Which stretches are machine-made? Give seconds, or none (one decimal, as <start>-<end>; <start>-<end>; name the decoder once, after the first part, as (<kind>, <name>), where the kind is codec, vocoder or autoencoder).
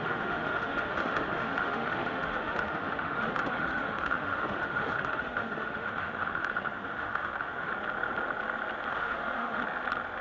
0.0-7.7 (autoencoder, DAC-VAE); 8.9-9.6